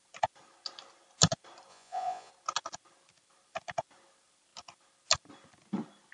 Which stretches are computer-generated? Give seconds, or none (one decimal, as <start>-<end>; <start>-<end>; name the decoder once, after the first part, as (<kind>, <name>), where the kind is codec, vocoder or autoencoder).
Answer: 1.7-2.3 (vocoder, Vocos)